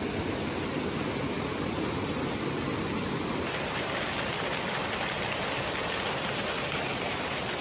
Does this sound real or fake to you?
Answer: real